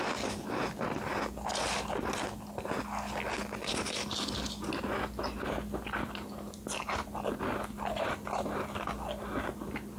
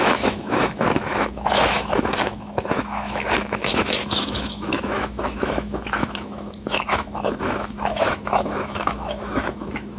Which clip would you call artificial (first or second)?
second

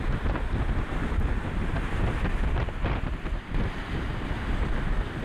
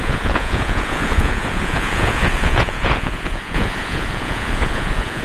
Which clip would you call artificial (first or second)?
second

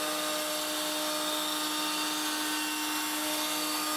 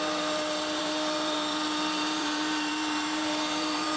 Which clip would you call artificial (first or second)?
second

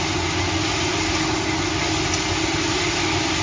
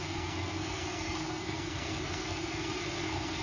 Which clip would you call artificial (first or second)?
second